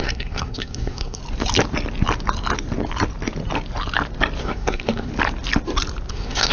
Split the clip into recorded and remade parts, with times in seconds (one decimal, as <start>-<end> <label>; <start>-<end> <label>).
0.0-1.2 remade; 1.2-4.4 recorded; 4.4-5.1 remade; 5.1-6.1 recorded; 6.1-6.5 remade